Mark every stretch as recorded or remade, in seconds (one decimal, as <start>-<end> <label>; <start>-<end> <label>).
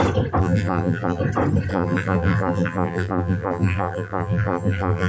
0.0-0.4 recorded; 0.4-1.2 remade; 1.2-1.7 recorded; 1.7-5.1 remade